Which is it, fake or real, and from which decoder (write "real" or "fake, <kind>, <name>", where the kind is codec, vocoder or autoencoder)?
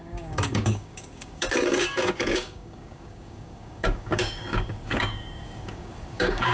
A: fake, codec, DAC